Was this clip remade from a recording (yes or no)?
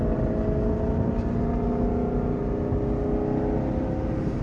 no